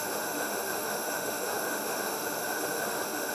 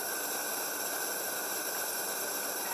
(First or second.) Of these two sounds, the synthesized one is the first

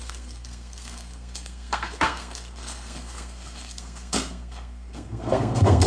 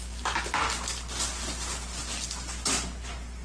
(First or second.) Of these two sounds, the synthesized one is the first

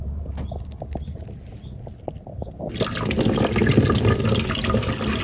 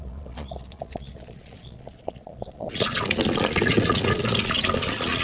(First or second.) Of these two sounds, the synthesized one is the second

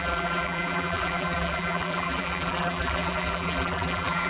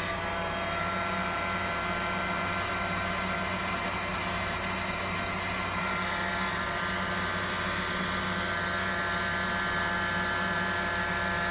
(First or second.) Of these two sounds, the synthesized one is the first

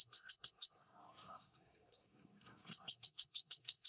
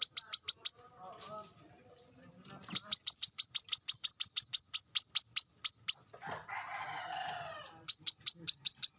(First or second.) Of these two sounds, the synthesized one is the first